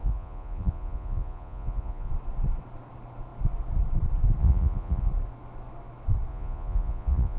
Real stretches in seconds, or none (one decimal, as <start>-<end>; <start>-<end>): 2.1-4.4; 5.1-6.3

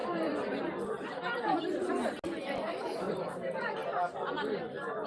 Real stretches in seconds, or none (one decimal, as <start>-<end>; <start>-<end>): 0.0-5.1

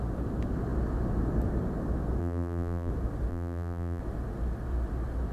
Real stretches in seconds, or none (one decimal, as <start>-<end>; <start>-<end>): 0.0-2.2; 2.9-3.3; 4.0-5.3

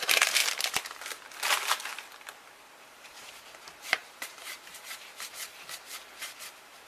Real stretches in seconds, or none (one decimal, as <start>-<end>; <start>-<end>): 0.4-2.8

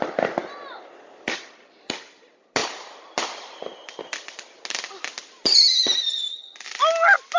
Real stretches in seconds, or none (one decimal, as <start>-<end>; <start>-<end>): 0.0-7.4

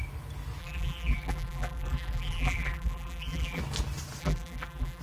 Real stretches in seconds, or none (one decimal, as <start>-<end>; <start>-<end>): 0.0-0.6; 3.6-4.2

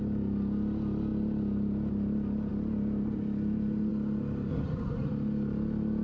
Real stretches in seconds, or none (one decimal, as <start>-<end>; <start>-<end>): 0.0-4.5; 5.1-6.0

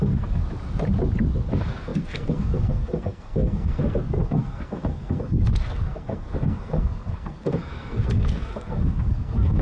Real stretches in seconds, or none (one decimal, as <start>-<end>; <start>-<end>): 0.4-1.5